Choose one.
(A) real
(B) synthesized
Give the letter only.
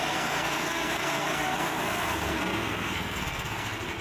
B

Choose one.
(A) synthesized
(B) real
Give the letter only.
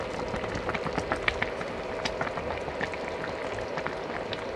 B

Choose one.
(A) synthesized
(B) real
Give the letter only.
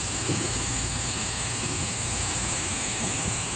A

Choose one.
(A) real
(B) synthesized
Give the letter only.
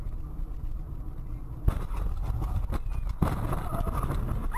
A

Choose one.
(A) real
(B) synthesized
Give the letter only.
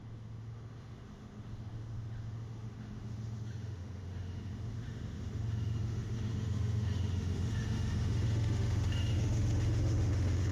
B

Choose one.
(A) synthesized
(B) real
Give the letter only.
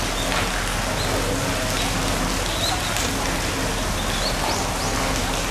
B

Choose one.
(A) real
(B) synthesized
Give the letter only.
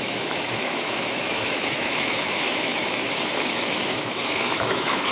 B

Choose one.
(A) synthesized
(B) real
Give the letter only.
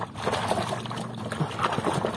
B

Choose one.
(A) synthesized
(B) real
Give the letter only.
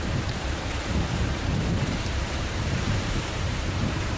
A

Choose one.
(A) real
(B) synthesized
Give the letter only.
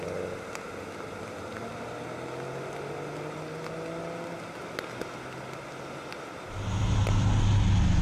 A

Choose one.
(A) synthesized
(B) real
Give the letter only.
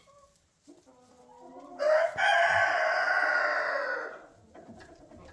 B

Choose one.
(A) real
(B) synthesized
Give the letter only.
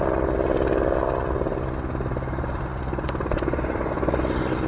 A